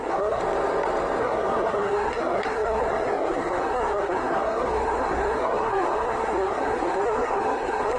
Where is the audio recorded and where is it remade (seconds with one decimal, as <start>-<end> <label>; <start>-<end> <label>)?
0.0-0.4 remade; 0.4-1.2 recorded; 1.2-8.0 remade